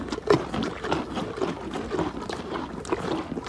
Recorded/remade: recorded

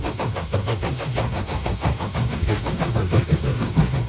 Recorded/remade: remade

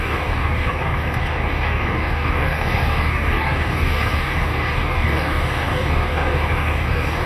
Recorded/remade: remade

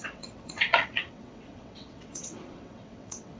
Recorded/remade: remade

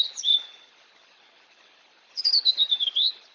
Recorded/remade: remade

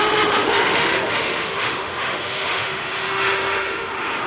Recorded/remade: remade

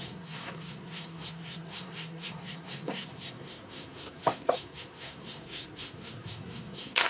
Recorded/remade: remade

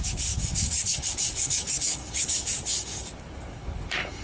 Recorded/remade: remade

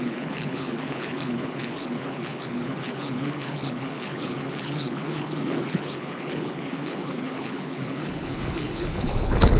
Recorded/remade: remade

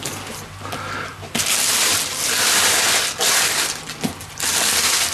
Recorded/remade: recorded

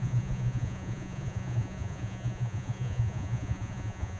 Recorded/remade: remade